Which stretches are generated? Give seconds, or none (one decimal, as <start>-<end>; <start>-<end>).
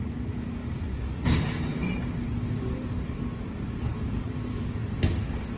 4.0-4.6